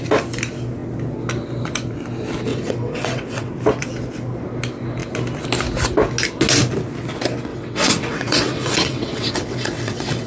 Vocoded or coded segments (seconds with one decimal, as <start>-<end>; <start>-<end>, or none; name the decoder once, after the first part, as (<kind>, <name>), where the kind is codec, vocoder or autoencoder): 2.5-3.5 (vocoder, WaveNeXt); 7.5-10.3